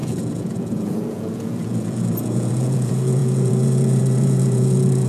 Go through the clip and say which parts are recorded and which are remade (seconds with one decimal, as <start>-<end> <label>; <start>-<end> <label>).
0.0-5.1 remade